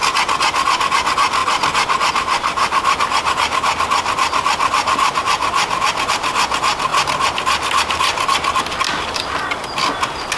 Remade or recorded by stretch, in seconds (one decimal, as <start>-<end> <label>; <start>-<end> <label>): 0.0-10.4 recorded